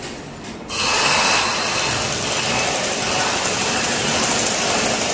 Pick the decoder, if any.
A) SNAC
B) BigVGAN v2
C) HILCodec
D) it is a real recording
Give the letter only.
B